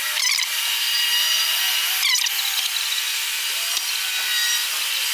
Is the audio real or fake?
fake